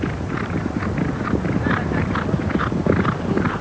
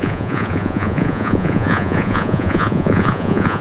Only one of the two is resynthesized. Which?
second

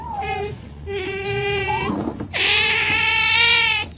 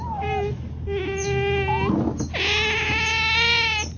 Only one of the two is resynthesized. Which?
first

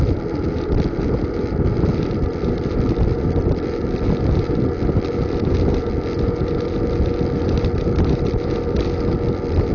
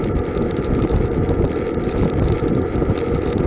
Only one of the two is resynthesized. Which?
second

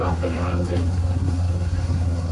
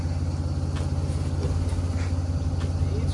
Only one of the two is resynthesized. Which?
first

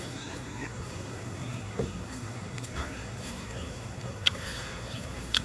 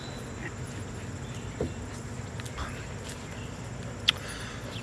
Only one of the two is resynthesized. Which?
first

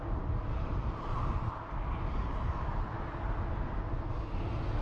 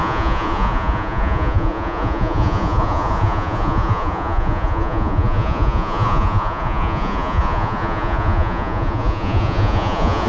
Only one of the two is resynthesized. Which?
second